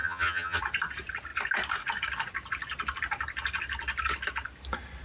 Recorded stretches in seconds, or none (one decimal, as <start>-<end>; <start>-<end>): 0.6-5.0

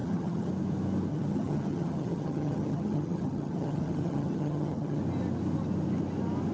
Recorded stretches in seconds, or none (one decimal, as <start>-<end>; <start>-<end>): 0.5-1.1; 5.0-6.5

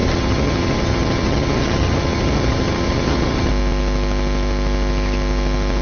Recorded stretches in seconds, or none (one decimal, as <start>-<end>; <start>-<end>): 3.5-5.8